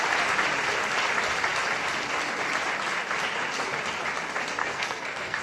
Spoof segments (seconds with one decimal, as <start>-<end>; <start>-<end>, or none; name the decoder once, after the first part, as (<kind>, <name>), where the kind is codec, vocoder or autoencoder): 4.6-5.4 (codec, SNAC)